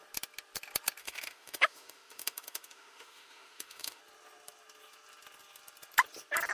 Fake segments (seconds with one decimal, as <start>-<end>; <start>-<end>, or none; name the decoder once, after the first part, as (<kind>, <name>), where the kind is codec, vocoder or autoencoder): 1.0-4.0 (autoencoder, DAC-VAE)